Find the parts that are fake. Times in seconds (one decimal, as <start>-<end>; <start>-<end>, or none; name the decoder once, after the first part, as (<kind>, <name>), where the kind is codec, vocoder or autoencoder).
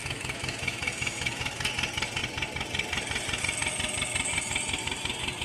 0.0-1.7 (autoencoder, DAC-VAE)